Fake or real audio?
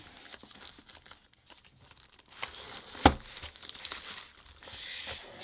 real